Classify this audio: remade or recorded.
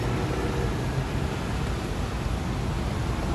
recorded